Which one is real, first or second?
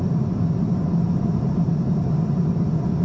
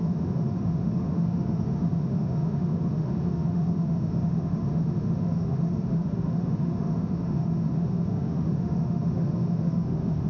first